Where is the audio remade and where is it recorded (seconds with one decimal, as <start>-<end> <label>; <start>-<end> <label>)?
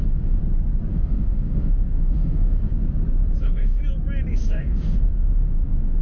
0.0-0.4 remade; 0.4-0.9 recorded; 0.9-2.7 remade; 2.7-3.4 recorded; 3.4-3.8 remade; 3.8-4.4 recorded; 4.4-6.0 remade